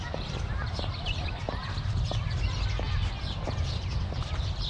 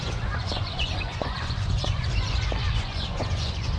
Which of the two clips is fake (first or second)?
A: second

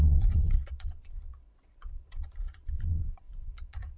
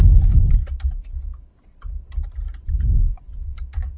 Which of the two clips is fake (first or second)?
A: first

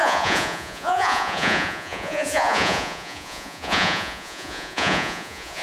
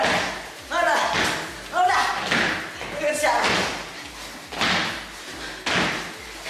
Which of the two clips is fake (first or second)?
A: first